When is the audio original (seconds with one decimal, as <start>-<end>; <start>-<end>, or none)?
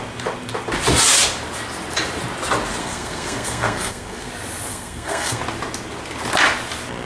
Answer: 0.0-2.8; 4.3-4.7; 5.4-7.1